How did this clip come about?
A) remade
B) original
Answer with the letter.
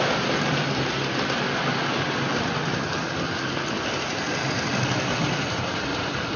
B